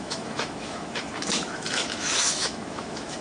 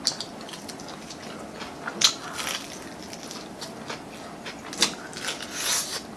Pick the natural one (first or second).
second